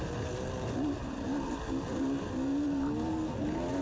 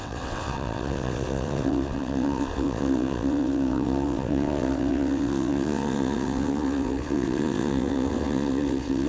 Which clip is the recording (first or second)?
first